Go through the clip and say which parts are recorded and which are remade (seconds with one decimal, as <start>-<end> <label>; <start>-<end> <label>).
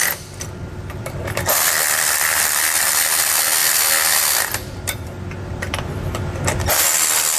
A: 0.0-3.6 remade; 3.6-6.0 recorded; 6.0-7.4 remade